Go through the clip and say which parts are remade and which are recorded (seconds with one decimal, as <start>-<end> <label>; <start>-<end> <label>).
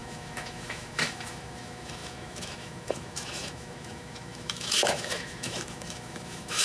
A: 0.0-6.6 remade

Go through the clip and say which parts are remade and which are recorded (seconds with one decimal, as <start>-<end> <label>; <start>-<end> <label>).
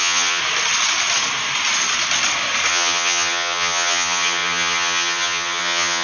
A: 0.0-0.4 remade; 0.4-2.7 recorded; 2.7-6.0 remade